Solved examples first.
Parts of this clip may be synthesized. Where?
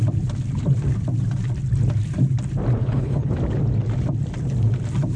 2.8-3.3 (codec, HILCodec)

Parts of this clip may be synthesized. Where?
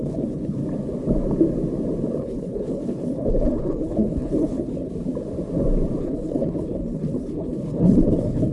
0.0-0.6 (codec, HILCodec); 2.2-4.9; 6.0-8.5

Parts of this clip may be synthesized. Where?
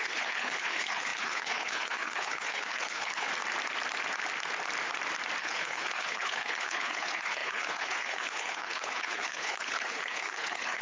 0.0-3.3 (codec, HILCodec); 5.4-10.8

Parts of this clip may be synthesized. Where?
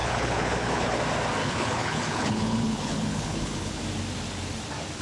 0.0-1.0 (codec, HILCodec); 1.4-3.8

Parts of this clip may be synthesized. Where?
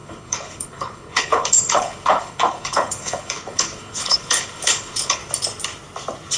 0.0-5.2 (codec, HILCodec)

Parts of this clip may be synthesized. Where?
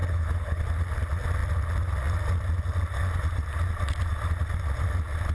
0.0-0.6 (codec, HILCodec)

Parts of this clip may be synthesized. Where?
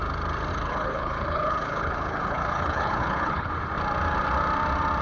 0.5-3.5 (codec, HILCodec)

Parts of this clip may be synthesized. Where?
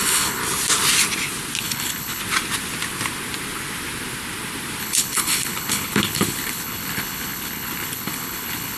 0.0-0.4 (codec, HILCodec); 1.6-2.2; 4.8-8.8